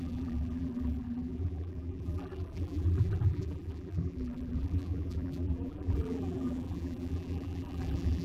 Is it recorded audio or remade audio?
remade